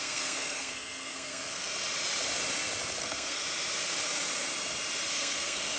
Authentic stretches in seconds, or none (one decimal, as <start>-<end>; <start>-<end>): 1.7-3.0; 3.4-5.1